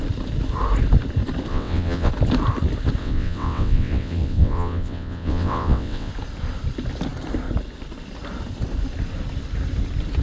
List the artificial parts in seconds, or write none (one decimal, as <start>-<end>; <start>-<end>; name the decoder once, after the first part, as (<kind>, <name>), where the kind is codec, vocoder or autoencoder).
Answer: 1.5-2.1 (vocoder, WaveNeXt); 3.0-6.1